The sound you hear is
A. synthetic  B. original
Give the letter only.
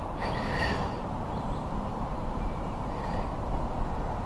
A